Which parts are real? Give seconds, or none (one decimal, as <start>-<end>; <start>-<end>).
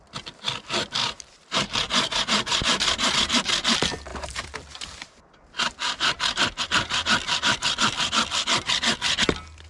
0.0-1.0; 3.1-4.1; 6.6-9.7